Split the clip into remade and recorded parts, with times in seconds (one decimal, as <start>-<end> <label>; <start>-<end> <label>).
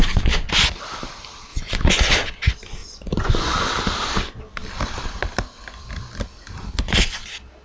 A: 0.0-1.5 recorded; 1.5-2.0 remade; 2.0-2.8 recorded; 2.8-3.7 remade; 3.7-7.6 recorded